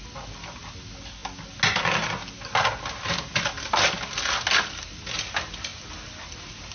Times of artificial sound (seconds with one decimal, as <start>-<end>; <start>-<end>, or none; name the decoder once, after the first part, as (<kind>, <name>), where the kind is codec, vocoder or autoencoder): none